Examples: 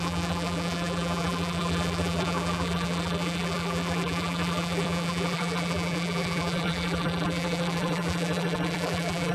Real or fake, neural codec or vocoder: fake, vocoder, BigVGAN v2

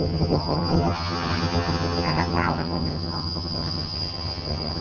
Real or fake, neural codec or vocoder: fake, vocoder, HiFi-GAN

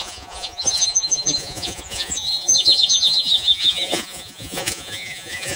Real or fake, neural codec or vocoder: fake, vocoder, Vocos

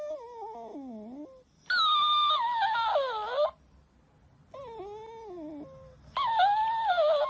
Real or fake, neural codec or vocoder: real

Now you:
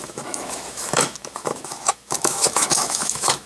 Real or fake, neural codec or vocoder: fake, autoencoder, DAC-VAE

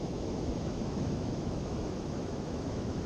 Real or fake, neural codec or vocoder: fake, autoencoder, DAC-VAE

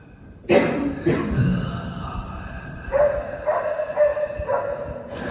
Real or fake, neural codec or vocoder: real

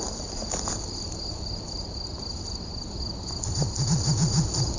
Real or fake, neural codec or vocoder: real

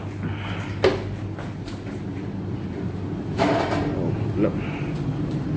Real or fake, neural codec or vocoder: real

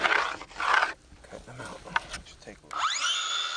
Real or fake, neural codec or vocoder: real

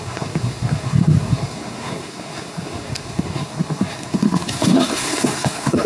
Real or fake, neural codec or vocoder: fake, codec, SNAC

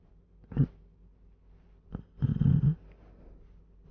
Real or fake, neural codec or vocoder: real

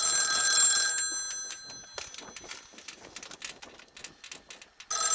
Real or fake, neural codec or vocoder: real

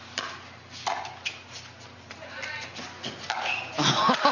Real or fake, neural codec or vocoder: real